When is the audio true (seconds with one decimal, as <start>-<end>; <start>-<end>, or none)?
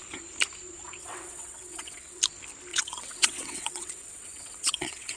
0.0-1.0; 2.2-2.7